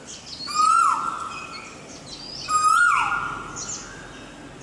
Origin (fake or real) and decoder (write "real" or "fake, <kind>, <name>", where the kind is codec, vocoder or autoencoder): real